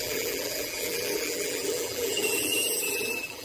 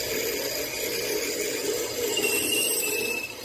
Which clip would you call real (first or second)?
second